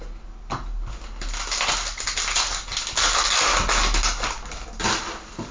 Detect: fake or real real